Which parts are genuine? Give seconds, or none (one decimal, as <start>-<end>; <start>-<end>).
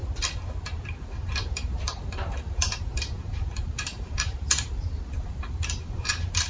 0.0-1.4